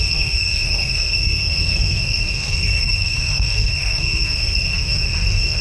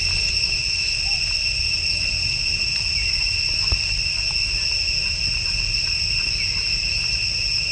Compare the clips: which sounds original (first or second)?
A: second